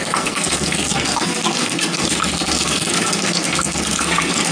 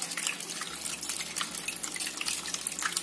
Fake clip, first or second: first